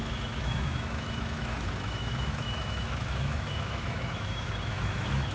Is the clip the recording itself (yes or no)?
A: no